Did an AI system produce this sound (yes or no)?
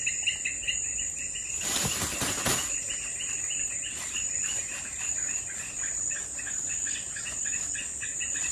no